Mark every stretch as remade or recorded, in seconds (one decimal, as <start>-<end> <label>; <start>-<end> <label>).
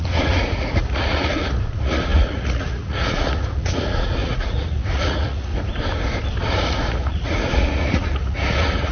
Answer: 0.0-5.5 remade; 5.5-6.4 recorded; 6.4-8.9 remade